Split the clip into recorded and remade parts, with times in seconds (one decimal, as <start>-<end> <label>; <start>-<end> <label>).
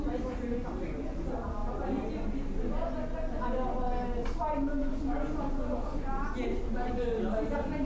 0.0-7.9 recorded